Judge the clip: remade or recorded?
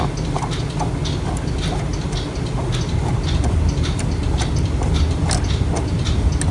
recorded